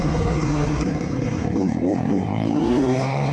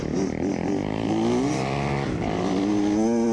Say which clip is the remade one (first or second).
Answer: first